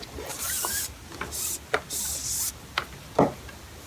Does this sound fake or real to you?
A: real